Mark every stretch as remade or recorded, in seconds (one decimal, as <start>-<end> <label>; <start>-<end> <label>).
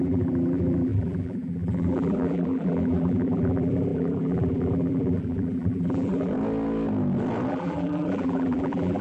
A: 0.0-6.3 remade; 6.3-7.5 recorded; 7.5-9.0 remade